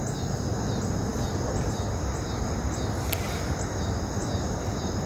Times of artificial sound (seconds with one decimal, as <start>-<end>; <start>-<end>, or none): none

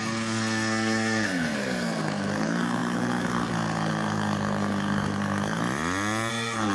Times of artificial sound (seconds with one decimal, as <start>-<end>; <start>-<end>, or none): 0.0-5.6; 6.3-6.7